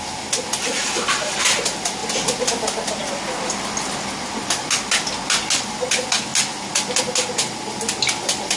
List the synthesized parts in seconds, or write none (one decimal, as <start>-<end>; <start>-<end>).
none